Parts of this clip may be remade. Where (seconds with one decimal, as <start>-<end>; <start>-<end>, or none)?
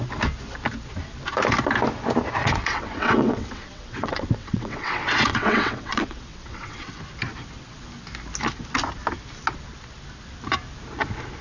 2.4-7.0